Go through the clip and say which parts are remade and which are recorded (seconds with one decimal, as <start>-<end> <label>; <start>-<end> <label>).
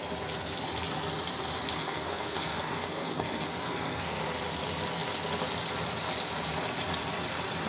0.0-1.8 recorded; 1.8-4.2 remade; 4.2-7.7 recorded